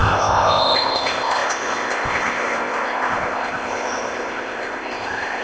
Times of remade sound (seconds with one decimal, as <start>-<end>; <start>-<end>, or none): 0.0-5.4